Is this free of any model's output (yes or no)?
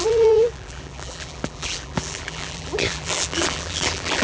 no